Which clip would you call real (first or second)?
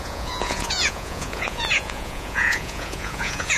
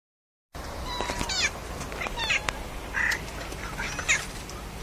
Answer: second